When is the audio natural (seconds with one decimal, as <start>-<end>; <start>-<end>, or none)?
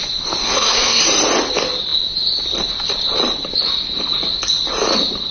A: 0.0-0.4; 1.0-5.3